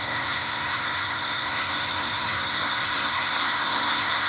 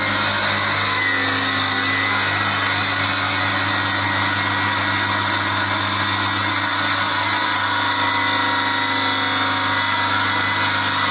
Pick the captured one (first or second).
second